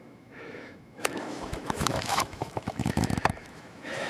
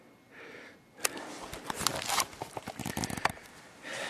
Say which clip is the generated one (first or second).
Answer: first